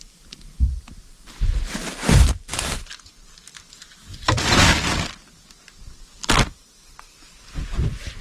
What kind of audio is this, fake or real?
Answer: real